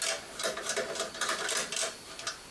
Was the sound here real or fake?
real